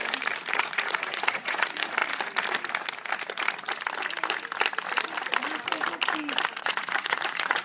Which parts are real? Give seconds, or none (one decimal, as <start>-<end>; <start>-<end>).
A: 0.0-0.5; 2.0-6.6